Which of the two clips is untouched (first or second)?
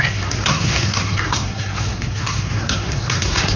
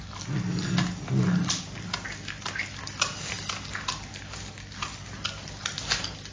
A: second